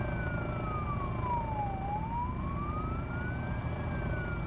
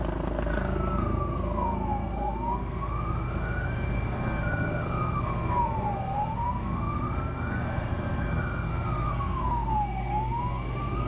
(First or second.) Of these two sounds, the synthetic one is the second